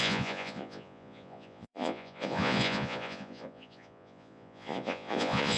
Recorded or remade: remade